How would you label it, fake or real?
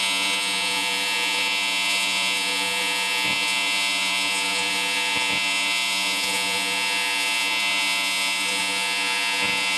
fake